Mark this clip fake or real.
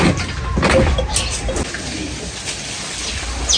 real